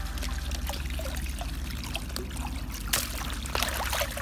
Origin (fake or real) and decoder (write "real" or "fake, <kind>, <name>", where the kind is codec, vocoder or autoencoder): real